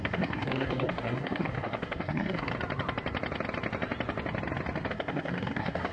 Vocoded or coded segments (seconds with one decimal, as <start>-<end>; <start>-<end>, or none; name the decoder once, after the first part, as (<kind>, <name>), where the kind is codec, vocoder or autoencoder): 0.0-2.5 (codec, SNAC); 4.9-5.9